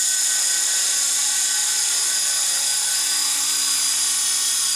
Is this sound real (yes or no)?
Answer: yes